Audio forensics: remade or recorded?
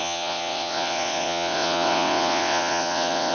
remade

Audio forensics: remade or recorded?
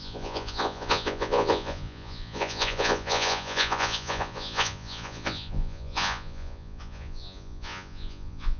remade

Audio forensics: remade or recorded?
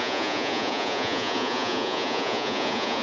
remade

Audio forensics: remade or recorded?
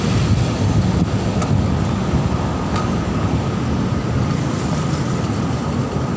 recorded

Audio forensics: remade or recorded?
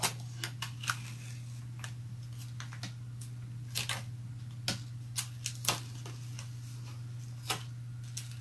recorded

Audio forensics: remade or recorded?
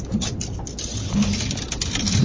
recorded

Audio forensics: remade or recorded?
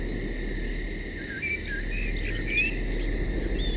recorded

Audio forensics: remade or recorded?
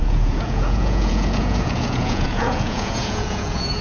remade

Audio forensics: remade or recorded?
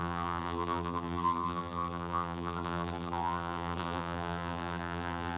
remade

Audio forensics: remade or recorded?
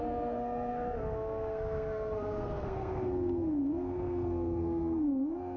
remade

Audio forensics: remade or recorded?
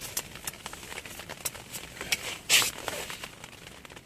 recorded